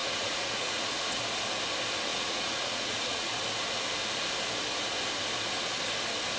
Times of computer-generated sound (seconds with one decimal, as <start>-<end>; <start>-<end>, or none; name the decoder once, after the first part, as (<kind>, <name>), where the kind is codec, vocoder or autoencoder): 0.0-1.2 (vocoder, Vocos); 2.1-3.3